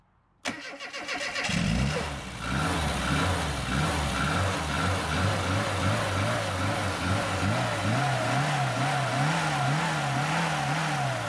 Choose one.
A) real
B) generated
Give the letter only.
A